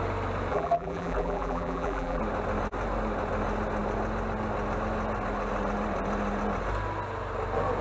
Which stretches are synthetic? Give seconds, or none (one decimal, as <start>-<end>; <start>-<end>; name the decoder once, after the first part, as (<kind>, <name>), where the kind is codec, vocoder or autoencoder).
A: 0.5-2.2 (vocoder, BigVGAN v2)